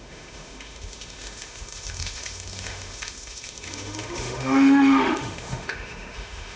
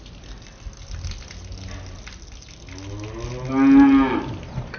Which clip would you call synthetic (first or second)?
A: first